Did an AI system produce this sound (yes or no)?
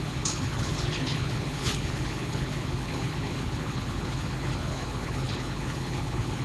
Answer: yes